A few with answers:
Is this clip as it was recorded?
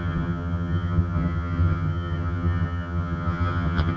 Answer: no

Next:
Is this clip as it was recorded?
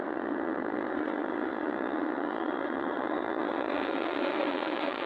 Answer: no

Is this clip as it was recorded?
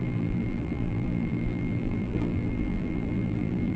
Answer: no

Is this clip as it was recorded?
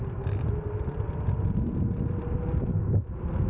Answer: no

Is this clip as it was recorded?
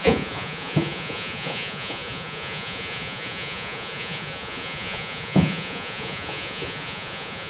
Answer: no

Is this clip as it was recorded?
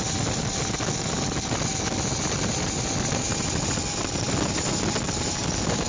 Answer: yes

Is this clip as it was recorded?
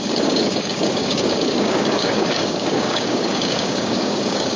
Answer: no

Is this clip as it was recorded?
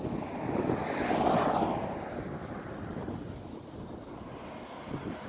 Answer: yes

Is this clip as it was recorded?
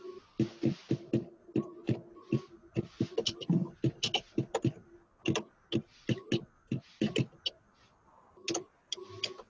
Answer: yes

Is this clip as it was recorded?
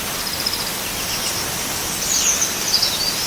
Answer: yes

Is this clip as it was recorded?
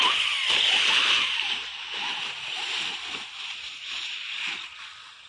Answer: yes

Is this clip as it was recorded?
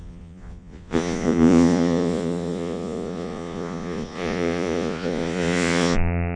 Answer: no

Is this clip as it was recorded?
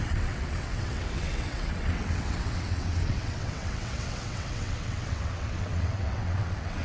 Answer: no